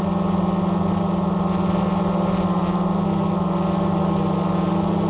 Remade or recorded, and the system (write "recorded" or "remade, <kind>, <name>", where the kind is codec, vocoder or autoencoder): recorded